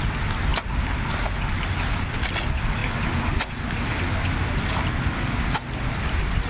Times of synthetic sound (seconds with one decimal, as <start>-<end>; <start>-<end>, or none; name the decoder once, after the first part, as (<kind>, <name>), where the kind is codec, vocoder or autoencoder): none